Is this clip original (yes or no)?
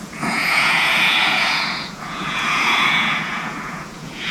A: no